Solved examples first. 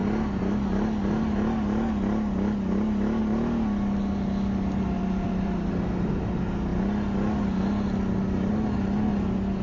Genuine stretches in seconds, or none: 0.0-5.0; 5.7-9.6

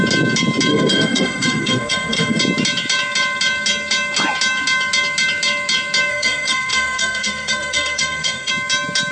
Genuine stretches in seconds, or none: 0.0-0.7; 2.4-6.1; 8.5-9.1

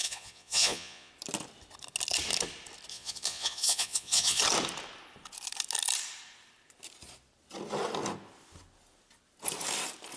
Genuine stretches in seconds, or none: 1.1-2.9; 4.4-10.2

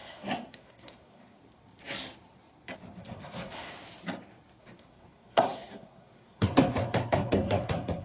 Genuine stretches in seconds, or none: 1.4-3.0; 3.7-4.6

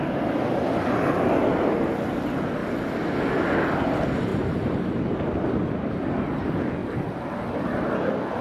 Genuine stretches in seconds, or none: 0.0-4.3; 5.5-8.4

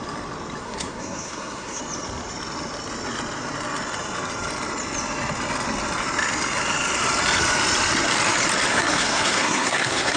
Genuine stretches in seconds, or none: 0.0-0.6; 1.8-8.7

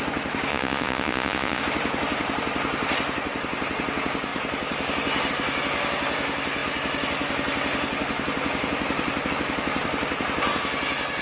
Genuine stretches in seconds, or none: 0.0-0.5; 1.6-11.2

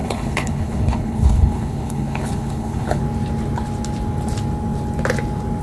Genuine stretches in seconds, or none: 3.0-5.6